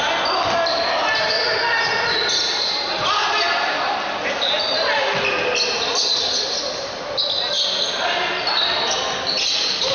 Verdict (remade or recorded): recorded